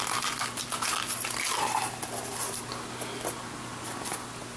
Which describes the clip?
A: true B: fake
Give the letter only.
A